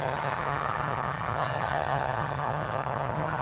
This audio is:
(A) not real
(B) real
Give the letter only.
A